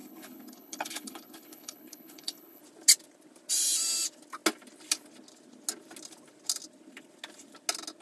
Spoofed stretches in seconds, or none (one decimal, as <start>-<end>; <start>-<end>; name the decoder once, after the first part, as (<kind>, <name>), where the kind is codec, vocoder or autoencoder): 0.0-2.6 (codec, HILCodec)

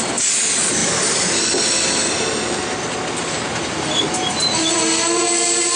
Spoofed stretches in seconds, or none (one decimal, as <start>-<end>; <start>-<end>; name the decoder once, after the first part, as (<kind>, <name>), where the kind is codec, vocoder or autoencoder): none

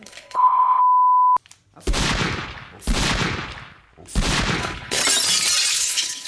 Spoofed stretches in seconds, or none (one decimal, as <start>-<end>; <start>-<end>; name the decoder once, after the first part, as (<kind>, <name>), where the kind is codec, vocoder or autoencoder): 0.0-0.8 (codec, HILCodec); 4.6-5.0; 5.7-6.3

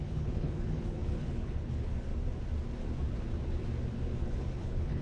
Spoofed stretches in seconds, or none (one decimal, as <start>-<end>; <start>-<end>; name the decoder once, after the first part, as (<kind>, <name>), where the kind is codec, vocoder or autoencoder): 0.0-2.1 (codec, HILCodec); 4.2-5.0

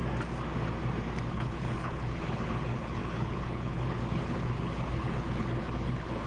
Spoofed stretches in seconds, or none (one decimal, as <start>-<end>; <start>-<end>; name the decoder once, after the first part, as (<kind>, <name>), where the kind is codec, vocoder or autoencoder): 1.3-6.3 (codec, HILCodec)

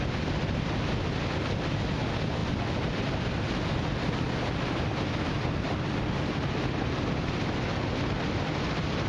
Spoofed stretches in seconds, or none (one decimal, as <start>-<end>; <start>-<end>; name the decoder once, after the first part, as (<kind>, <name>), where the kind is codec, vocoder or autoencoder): none

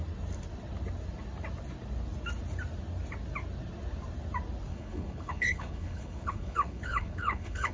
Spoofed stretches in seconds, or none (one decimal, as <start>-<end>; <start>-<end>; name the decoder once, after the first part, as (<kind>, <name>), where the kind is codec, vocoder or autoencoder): 4.7-7.7 (codec, HILCodec)